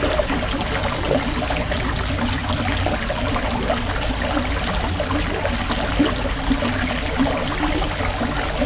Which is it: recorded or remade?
recorded